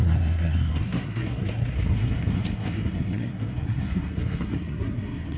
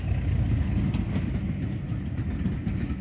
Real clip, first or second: second